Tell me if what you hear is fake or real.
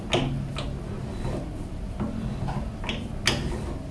real